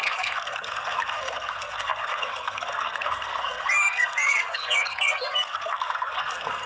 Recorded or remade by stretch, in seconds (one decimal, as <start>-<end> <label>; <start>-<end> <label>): 0.0-6.7 remade